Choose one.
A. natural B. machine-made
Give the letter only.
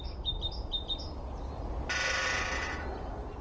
A